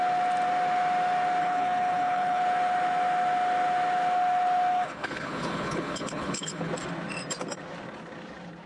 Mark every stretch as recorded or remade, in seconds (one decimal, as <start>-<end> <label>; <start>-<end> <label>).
0.0-1.4 recorded; 1.4-2.4 remade; 2.4-4.7 recorded; 4.7-6.7 remade; 6.7-8.7 recorded